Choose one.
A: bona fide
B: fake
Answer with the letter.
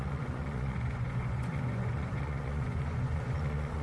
B